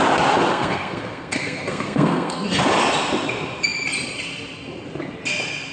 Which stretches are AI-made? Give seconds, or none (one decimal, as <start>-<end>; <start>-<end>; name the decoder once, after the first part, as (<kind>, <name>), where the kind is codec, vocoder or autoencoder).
0.5-2.6 (codec, SNAC)